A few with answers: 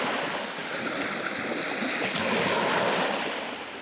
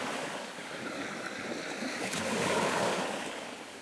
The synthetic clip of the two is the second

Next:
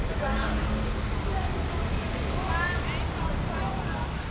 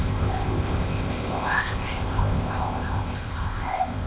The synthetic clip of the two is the second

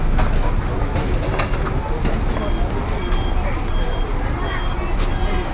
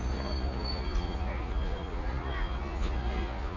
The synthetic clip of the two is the second